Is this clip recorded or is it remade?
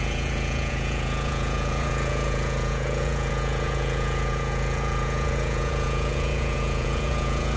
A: remade